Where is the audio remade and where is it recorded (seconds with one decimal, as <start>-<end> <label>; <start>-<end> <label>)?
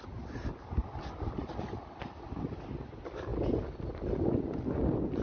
0.0-5.2 recorded